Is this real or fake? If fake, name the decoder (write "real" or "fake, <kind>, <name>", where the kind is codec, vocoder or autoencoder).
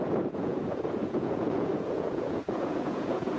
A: fake, vocoder, Vocos